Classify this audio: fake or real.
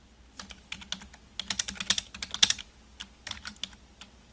real